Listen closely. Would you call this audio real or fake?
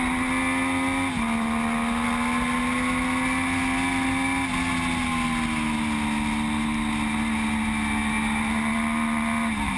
real